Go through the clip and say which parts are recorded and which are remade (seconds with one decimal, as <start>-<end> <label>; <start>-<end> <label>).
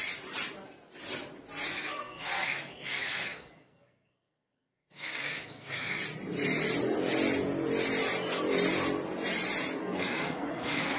0.0-1.7 recorded; 1.7-6.0 remade; 6.0-9.8 recorded; 9.8-11.0 remade